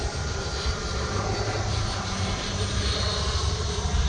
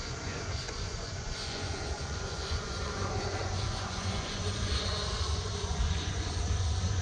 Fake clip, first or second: second